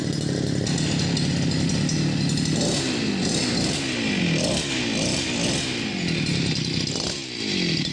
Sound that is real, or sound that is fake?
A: real